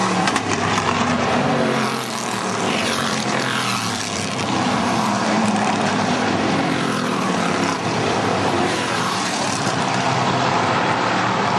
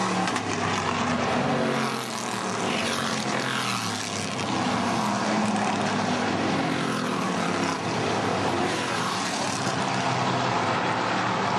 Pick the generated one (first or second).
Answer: first